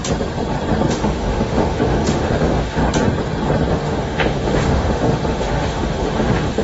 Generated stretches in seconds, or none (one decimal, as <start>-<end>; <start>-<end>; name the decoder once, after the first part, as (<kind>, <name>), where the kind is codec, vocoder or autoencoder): 0.9-2.8 (autoencoder, DAC-VAE); 3.7-6.6